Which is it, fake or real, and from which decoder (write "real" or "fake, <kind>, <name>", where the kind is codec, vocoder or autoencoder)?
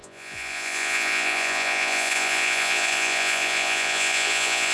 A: fake, vocoder, Vocos